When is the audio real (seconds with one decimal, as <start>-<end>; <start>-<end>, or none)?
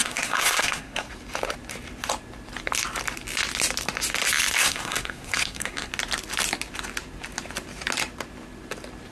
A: 1.1-4.6; 5.9-9.1